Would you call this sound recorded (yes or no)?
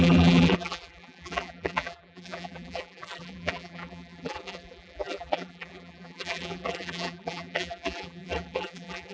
no